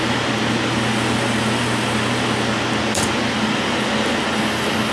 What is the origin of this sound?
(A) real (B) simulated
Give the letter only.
A